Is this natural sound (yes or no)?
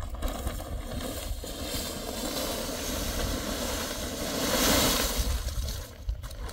yes